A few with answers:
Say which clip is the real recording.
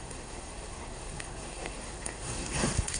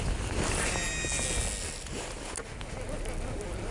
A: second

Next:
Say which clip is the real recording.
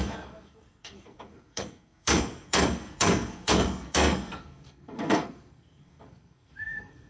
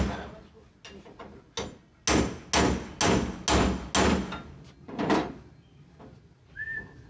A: second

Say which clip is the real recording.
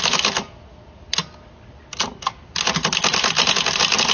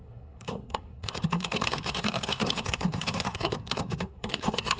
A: first